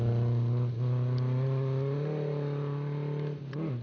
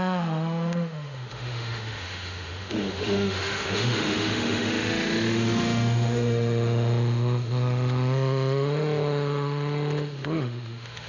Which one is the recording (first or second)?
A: first